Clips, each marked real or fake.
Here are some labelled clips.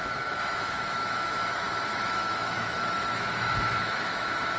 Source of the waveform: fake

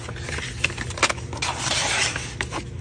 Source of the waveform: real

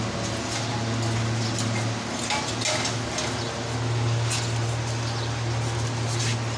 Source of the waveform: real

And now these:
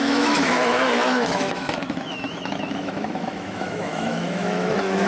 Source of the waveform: fake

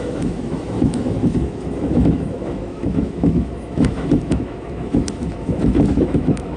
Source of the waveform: fake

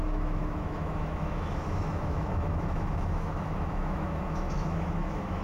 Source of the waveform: fake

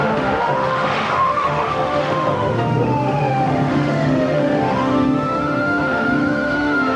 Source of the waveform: fake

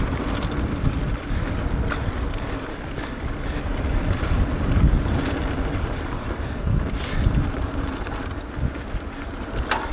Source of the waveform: real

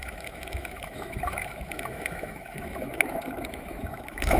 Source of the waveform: fake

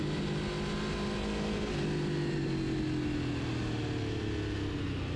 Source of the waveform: real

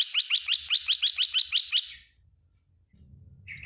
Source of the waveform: real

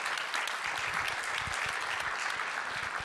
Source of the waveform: real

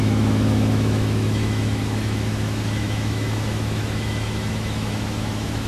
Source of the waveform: fake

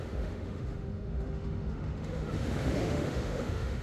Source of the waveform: fake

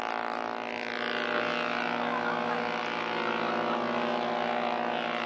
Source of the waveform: real